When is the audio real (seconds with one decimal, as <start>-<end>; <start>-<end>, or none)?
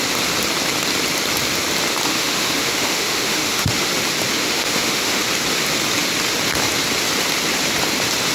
0.0-2.1; 3.9-4.4; 5.2-8.3